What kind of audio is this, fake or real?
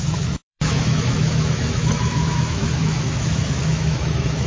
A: fake